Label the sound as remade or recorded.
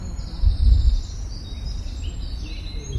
recorded